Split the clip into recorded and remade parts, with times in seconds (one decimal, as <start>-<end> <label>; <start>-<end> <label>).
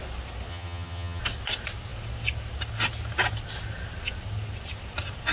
0.0-0.5 recorded; 0.5-1.2 remade; 1.2-5.3 recorded